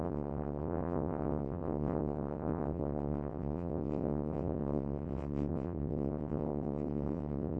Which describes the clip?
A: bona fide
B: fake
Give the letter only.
B